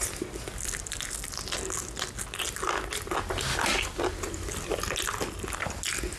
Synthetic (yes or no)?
no